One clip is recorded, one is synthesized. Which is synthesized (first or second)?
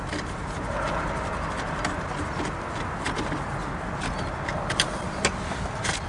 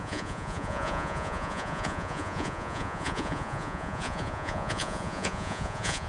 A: second